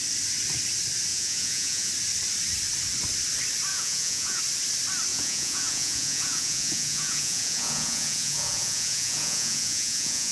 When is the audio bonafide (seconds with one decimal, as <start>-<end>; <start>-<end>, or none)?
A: 0.0-1.1; 1.9-3.7; 4.4-5.1